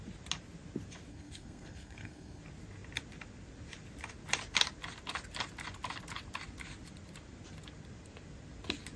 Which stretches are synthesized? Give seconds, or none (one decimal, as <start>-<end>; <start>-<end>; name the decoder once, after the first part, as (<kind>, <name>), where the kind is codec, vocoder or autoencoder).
1.1-2.4 (codec, SNAC)

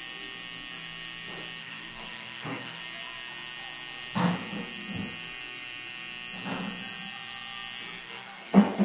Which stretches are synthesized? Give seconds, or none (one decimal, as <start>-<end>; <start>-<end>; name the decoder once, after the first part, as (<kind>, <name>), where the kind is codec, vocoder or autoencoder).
1.6-2.8 (codec, SNAC); 8.0-8.8

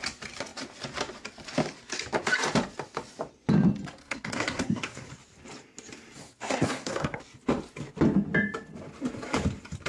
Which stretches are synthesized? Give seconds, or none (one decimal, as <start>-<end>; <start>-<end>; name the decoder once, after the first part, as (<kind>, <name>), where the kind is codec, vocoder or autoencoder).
4.0-5.1 (codec, SNAC); 6.2-7.2

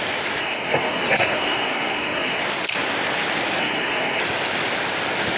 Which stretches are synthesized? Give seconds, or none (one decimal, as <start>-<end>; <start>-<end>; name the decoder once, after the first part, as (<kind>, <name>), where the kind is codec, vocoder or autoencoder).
0.4-2.4 (codec, SNAC); 3.6-4.2